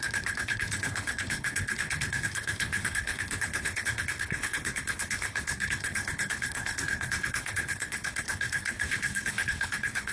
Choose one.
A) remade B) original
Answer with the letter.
A